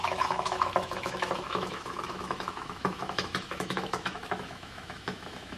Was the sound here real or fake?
fake